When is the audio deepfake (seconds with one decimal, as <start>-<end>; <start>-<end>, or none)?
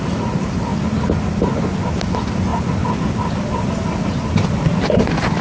0.0-0.7; 2.1-2.5; 4.8-5.4